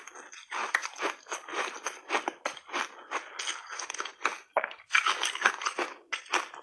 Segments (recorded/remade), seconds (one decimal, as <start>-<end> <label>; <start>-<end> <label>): 0.0-6.6 recorded